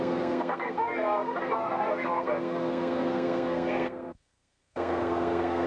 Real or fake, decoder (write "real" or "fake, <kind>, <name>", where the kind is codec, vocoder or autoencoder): fake, codec, SNAC